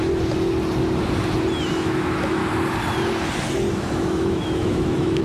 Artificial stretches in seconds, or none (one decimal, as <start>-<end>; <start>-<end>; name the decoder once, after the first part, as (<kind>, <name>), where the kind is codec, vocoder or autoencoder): 1.7-2.4 (autoencoder, DAC-VAE); 3.7-5.2